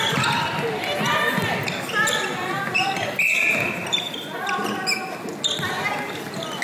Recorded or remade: recorded